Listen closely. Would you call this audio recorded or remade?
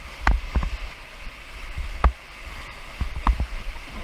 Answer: recorded